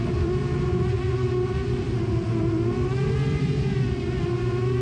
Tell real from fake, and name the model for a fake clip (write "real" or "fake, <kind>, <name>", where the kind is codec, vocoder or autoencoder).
real